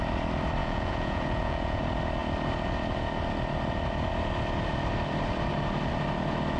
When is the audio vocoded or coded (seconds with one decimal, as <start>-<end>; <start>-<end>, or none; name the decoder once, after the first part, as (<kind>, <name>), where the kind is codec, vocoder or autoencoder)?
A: 0.6-1.8 (vocoder, Vocos)